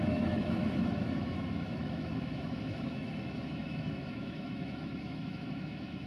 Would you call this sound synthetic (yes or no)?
yes